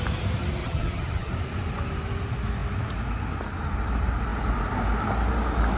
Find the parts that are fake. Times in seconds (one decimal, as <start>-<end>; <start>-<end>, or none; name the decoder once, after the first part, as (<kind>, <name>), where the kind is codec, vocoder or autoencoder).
0.6-1.3 (vocoder, HiFi-GAN)